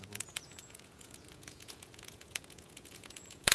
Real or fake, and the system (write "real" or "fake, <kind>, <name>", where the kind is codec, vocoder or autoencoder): fake, vocoder, Vocos